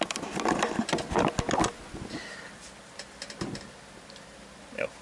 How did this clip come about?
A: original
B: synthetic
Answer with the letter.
A